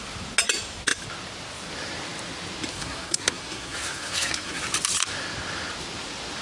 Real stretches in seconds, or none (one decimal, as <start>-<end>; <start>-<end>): 0.0-2.7; 4.6-6.4